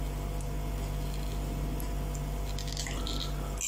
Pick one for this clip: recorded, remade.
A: recorded